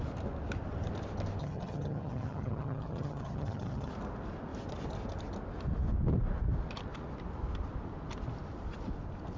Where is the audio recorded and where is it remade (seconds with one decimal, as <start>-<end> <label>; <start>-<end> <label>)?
0.0-1.4 recorded; 1.4-3.9 remade; 3.9-9.4 recorded